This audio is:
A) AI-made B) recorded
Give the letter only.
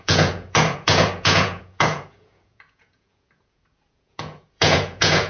A